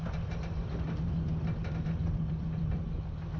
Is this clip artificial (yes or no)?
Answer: no